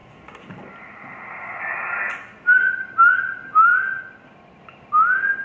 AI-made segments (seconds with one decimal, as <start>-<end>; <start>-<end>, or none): none